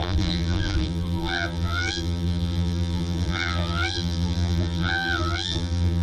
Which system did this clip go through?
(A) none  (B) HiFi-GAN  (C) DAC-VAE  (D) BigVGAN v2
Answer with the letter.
D